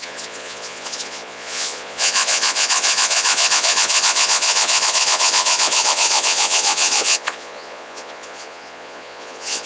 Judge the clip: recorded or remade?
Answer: remade